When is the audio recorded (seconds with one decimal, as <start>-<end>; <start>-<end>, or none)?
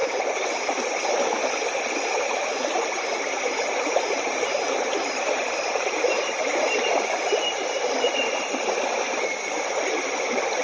none